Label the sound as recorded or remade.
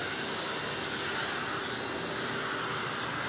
recorded